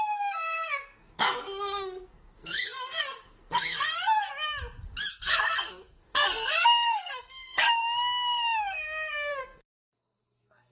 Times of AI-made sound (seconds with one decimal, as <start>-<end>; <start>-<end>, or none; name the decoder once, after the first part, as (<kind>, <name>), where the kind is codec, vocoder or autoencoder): 0.0-4.3 (codec, SNAC); 5.1-10.7